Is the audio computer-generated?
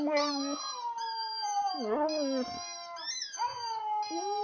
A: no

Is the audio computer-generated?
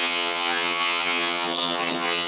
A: yes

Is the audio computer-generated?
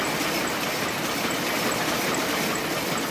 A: no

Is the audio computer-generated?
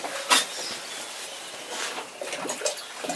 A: no